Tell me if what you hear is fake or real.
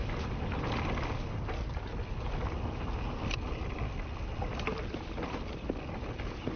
real